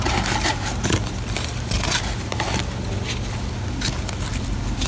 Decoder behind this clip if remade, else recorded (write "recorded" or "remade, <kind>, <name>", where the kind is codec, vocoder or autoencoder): recorded